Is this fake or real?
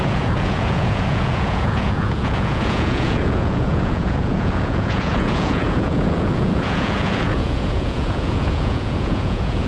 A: fake